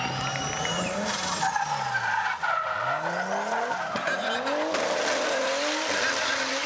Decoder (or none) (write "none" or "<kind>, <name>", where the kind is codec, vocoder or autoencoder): none